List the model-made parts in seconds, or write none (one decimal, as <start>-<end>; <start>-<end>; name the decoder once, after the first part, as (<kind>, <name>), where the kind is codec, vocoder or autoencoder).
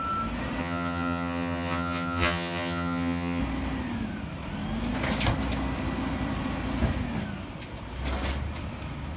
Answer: 0.6-3.4 (vocoder, HiFi-GAN)